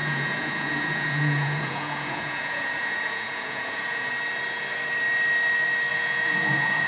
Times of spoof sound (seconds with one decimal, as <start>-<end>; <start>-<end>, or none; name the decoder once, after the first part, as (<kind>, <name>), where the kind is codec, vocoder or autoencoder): 0.0-4.1 (vocoder, Vocos); 5.9-6.9